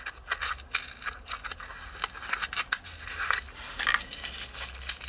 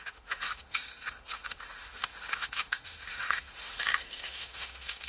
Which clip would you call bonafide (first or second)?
first